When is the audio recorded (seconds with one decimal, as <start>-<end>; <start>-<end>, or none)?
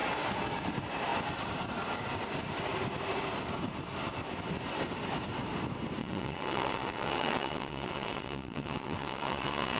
0.0-6.0